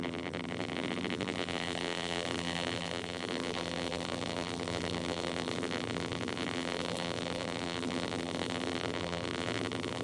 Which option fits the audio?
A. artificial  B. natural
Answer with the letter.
A